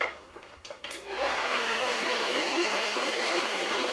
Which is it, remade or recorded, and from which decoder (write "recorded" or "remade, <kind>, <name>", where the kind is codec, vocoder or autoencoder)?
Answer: remade, codec, SNAC